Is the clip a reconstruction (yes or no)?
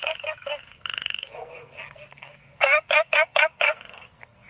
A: yes